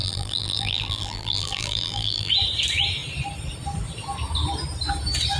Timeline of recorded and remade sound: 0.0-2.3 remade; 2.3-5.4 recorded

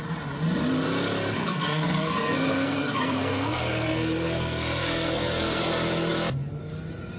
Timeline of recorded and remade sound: 0.0-1.4 recorded; 1.4-5.6 remade; 5.6-7.2 recorded

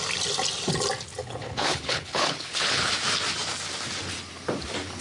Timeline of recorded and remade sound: 0.0-1.2 recorded; 1.2-2.9 remade; 2.9-5.0 recorded

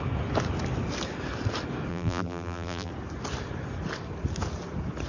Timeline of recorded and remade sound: 0.0-1.9 recorded; 1.9-2.9 remade; 2.9-5.1 recorded

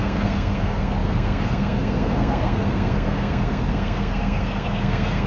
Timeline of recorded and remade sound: 0.0-5.3 remade

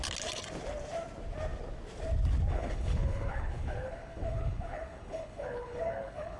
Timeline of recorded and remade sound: 0.0-2.5 recorded; 2.5-6.4 remade

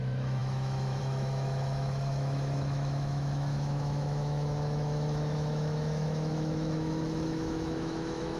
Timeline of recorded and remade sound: 0.0-8.4 remade